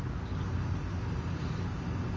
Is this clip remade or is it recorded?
recorded